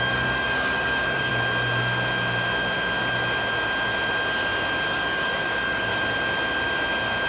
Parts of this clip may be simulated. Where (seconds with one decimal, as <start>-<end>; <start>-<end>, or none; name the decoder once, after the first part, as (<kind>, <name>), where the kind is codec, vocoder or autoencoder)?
0.0-1.3 (codec, DAC); 4.9-5.9